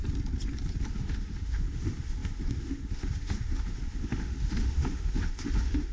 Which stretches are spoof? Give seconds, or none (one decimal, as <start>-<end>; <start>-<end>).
0.9-5.9